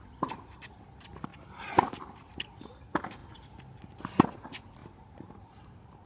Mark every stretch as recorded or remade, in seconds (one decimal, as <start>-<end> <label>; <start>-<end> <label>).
0.0-1.3 recorded; 1.3-2.0 remade; 2.0-4.8 recorded; 4.8-5.6 remade; 5.6-6.1 recorded